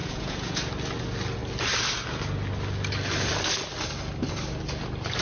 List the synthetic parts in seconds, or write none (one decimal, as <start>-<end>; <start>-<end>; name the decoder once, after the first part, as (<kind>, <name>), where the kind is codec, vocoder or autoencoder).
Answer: 0.0-0.7 (vocoder, Vocos)